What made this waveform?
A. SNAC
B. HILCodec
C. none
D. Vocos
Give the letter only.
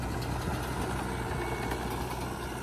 C